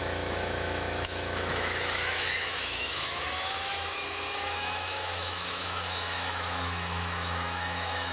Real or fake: fake